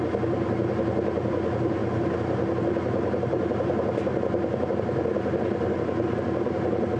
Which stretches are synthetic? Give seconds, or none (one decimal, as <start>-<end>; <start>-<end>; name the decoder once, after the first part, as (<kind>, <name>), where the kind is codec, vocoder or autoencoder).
none